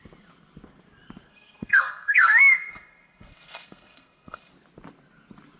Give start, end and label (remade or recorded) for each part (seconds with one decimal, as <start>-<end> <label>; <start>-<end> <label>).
0.0-1.3 recorded; 1.3-4.5 remade; 4.5-5.6 recorded